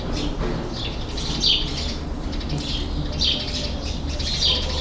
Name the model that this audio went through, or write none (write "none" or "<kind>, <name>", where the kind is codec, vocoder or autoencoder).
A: none